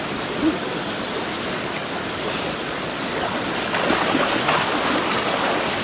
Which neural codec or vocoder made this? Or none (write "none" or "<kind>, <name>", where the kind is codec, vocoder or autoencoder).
none